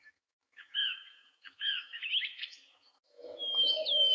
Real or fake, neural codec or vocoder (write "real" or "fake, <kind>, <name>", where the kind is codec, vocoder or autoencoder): fake, autoencoder, DAC-VAE